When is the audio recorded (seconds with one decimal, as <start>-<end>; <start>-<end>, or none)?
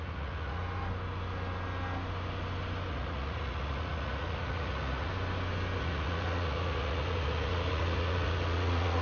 0.6-2.9; 5.1-5.8